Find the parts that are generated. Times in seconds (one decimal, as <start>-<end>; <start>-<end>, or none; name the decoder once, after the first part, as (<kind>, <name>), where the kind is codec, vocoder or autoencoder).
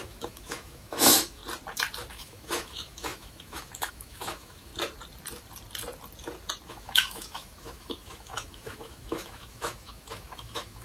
0.0-1.4 (autoencoder, DAC-VAE); 2.1-4.7; 6.7-10.8